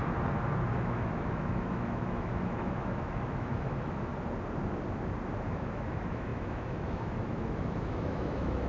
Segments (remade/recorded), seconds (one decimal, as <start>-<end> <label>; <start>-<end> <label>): 0.0-0.7 recorded; 0.7-4.1 remade; 4.1-5.5 recorded; 5.5-8.7 remade